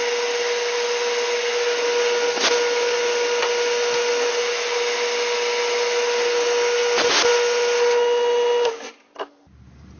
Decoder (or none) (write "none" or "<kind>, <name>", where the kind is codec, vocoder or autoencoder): none